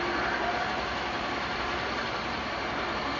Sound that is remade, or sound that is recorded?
recorded